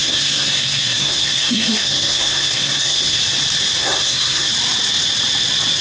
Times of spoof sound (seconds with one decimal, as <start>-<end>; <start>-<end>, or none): 0.0-3.2; 3.8-4.5